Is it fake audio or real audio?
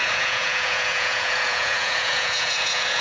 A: fake